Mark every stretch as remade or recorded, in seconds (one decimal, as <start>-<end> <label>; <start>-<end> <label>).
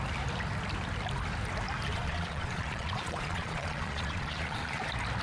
0.0-1.9 recorded; 1.9-4.8 remade; 4.8-5.2 recorded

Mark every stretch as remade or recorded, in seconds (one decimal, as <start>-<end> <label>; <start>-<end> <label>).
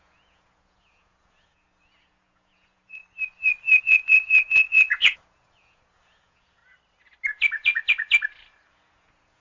0.0-3.0 remade; 3.0-3.8 recorded; 3.8-6.6 remade; 6.6-8.7 recorded; 8.7-9.4 remade